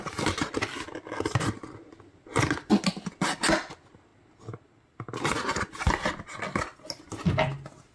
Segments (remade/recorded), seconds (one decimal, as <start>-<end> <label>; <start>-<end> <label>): 0.0-7.9 recorded